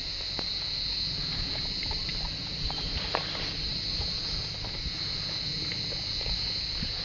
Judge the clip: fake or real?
real